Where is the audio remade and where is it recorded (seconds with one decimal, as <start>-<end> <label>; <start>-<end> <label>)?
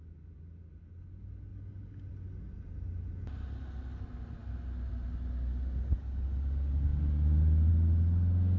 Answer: 0.0-8.6 recorded